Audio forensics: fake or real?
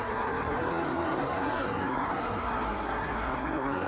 fake